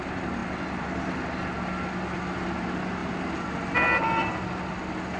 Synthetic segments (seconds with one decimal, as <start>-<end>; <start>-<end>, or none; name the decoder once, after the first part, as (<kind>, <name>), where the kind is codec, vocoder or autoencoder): none